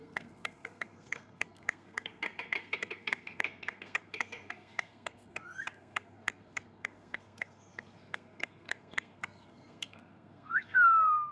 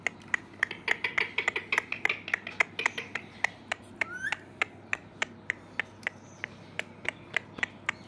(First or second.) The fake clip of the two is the first